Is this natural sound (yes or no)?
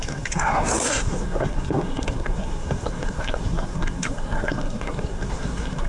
no